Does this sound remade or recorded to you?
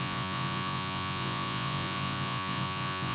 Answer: remade